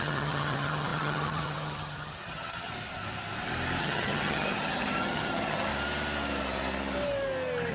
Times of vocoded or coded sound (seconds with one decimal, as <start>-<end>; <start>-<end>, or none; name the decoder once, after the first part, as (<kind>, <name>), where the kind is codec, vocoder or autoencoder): 0.0-2.7 (vocoder, HiFi-GAN); 3.8-5.7